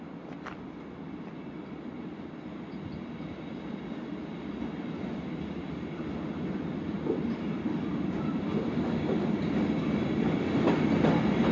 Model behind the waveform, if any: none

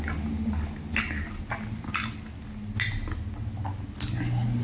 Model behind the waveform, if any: none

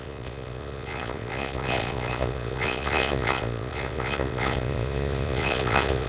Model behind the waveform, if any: vocoder, Vocos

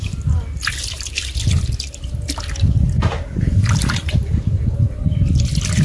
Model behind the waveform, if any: none